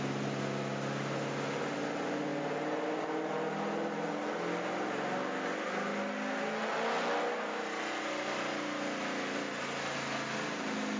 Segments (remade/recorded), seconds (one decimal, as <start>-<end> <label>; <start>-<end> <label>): 0.0-11.0 recorded